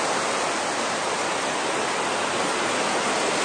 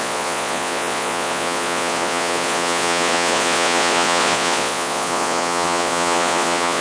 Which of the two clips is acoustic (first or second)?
first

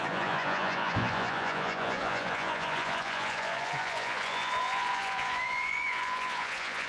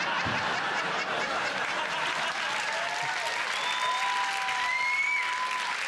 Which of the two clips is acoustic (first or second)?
second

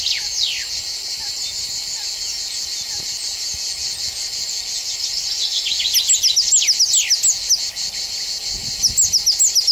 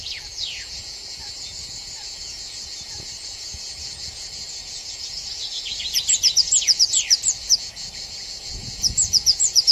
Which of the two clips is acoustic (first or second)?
first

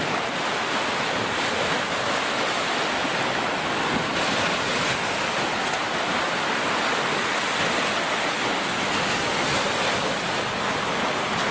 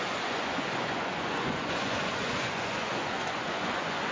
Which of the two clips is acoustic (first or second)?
first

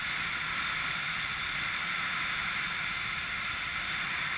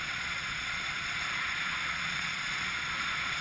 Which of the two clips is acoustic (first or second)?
first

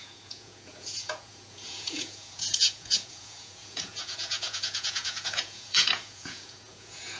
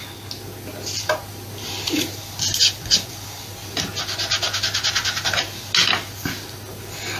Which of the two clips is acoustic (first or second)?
second